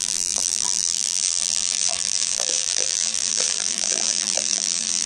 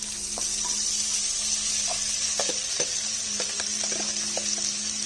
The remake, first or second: first